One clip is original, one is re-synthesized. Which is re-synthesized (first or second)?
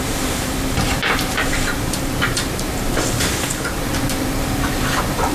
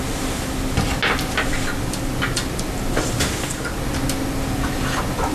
first